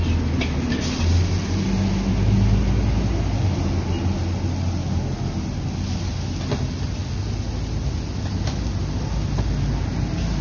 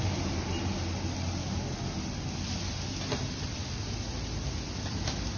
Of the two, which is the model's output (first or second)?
second